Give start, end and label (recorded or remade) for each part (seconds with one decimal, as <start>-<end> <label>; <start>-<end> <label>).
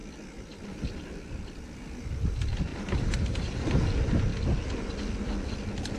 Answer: 0.0-2.7 recorded; 2.7-3.5 remade; 3.5-6.0 recorded